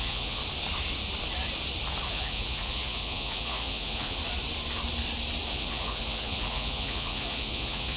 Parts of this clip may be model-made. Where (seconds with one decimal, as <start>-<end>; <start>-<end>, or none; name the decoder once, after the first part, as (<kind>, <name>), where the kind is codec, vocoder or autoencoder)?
0.0-0.4 (vocoder, Vocos); 2.1-4.2; 5.5-8.0